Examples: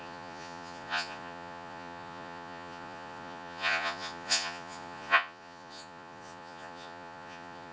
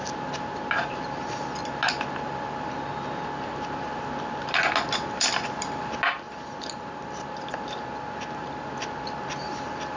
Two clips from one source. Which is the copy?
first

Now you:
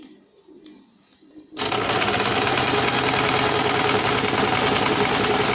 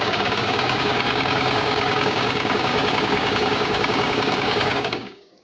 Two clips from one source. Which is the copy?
second